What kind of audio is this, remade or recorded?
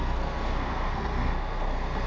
remade